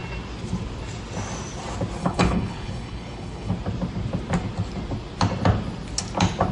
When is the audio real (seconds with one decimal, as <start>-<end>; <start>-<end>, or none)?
0.0-2.0; 3.5-6.5